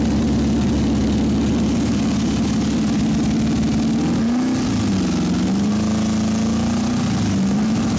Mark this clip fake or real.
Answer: real